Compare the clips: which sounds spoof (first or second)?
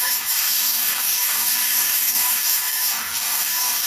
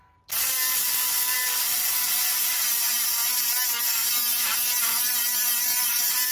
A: first